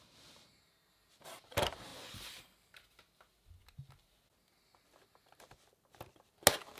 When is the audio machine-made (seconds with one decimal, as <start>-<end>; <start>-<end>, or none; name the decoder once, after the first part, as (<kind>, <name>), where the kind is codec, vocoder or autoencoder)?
none